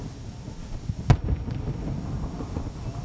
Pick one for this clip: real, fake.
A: real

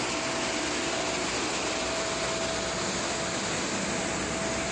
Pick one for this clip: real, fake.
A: real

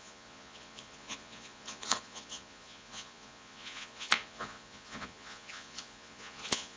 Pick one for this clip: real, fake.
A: fake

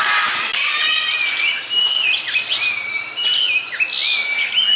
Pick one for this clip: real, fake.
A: real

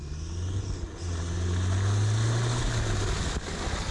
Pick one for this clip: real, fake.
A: real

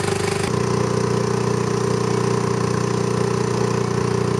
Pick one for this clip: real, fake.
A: real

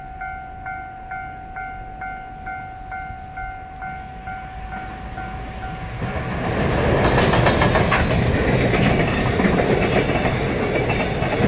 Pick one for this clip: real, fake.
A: real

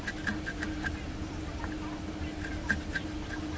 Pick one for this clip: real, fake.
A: real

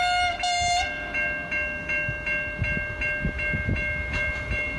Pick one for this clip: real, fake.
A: real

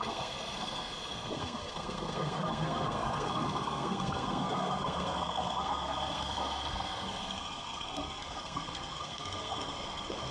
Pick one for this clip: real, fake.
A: fake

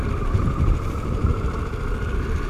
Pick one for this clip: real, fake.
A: fake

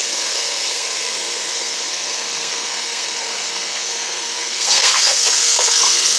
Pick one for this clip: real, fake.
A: fake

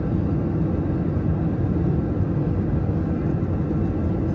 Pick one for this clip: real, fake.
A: real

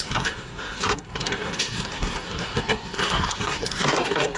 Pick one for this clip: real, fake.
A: fake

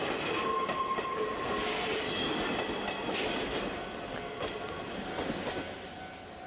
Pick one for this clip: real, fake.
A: real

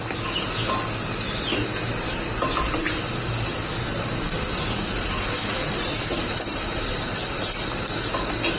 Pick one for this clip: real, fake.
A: real